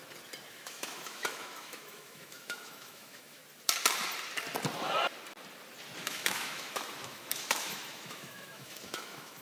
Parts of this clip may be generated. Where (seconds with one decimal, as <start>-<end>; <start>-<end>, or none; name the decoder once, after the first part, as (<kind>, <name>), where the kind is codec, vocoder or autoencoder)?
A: 0.5-3.4 (autoencoder, DAC-VAE); 6.0-9.4